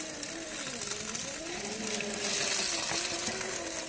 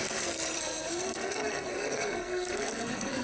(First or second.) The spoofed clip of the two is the second